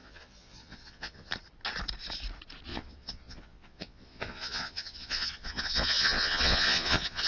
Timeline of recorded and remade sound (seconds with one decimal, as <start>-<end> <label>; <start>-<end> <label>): 0.0-1.3 remade; 1.3-2.7 recorded; 2.7-7.3 remade